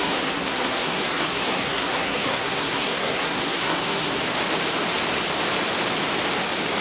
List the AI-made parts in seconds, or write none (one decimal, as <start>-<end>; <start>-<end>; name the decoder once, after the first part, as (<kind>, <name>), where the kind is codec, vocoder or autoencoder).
0.0-4.2 (codec, SNAC)